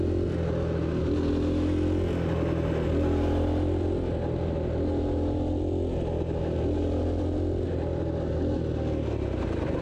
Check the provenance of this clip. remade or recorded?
recorded